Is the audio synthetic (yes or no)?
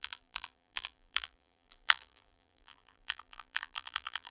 yes